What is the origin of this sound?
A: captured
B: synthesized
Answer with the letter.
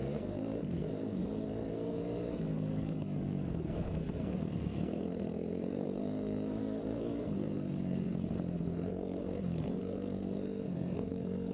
B